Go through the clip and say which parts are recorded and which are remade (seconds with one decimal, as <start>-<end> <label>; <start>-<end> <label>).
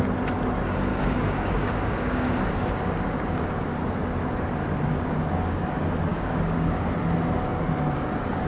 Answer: 0.0-0.9 recorded; 0.9-2.4 remade; 2.4-4.9 recorded; 4.9-5.6 remade; 5.6-6.1 recorded; 6.1-6.9 remade; 6.9-8.5 recorded